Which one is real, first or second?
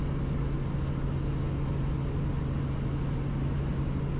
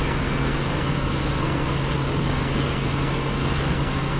first